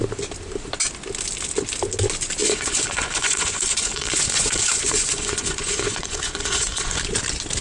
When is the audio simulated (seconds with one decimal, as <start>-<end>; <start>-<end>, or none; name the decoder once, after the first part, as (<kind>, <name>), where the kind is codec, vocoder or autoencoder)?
2.4-7.0 (vocoder, Vocos)